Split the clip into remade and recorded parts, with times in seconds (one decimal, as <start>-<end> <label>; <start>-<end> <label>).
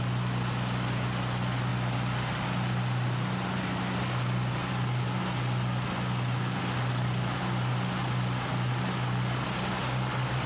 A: 0.0-10.5 recorded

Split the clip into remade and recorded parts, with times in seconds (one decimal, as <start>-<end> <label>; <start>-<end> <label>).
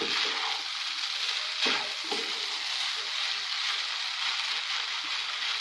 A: 0.0-5.6 recorded